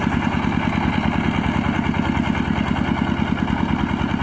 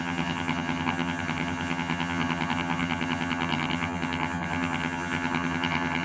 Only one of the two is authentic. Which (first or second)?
first